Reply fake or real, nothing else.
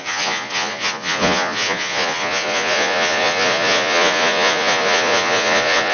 fake